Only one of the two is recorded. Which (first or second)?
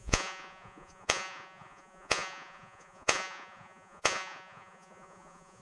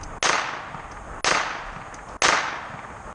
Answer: second